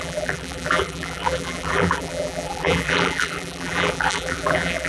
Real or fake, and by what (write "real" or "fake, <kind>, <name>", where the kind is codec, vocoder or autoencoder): fake, vocoder, BigVGAN v2